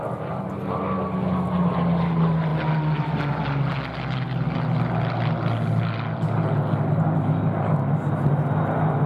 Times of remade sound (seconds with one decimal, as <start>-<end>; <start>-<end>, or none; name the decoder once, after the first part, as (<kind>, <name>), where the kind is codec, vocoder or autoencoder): none